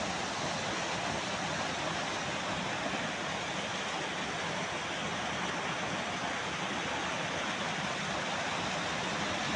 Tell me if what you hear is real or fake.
real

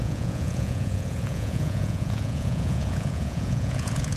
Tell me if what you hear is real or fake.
fake